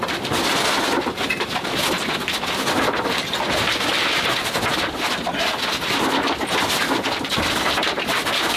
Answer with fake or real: real